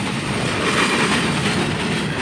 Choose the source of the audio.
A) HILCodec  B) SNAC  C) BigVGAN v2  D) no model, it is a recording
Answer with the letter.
D